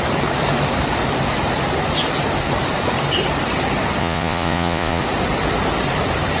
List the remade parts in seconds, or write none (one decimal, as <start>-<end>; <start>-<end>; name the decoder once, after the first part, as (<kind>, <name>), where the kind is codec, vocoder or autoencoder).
4.0-5.0 (vocoder, Vocos)